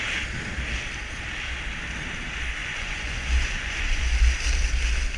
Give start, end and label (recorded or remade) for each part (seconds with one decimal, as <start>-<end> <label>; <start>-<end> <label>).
0.0-2.6 recorded; 2.6-4.1 remade; 4.1-5.2 recorded